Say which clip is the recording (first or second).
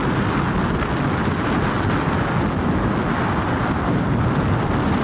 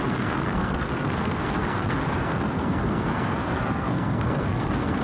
first